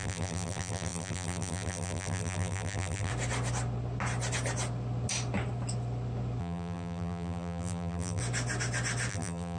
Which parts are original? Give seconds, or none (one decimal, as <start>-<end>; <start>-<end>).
3.1-6.4; 8.2-9.1